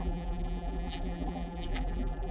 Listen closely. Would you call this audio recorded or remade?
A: remade